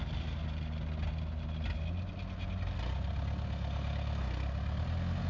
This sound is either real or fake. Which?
real